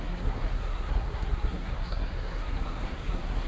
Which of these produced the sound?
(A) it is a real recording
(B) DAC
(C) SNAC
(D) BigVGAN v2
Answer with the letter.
C